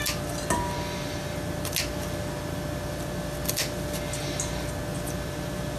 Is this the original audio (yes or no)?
yes